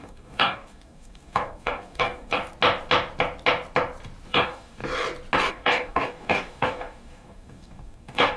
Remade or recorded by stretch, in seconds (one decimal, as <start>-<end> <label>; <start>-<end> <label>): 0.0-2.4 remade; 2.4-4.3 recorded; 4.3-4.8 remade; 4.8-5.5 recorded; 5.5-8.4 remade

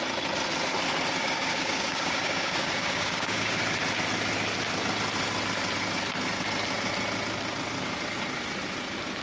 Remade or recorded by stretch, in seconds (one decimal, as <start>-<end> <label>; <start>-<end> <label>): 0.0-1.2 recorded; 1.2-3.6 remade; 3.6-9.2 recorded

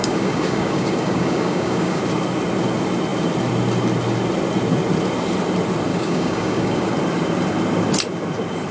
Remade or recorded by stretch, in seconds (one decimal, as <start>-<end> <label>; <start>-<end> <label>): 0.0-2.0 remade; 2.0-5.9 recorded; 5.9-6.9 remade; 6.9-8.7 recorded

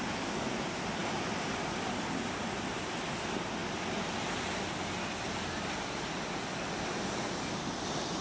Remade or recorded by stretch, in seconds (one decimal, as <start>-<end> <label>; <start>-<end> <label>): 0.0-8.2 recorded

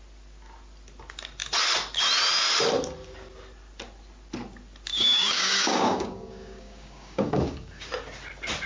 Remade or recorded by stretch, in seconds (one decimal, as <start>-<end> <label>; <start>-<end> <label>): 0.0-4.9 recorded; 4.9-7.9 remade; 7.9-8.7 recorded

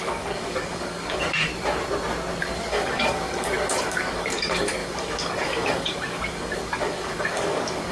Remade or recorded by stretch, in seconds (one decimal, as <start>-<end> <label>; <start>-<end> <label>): 0.0-1.5 remade; 1.5-2.4 recorded; 2.4-7.9 remade

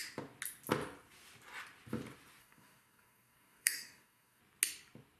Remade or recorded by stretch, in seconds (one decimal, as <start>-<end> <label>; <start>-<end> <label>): 0.0-2.4 recorded; 2.4-4.4 remade; 4.4-5.2 recorded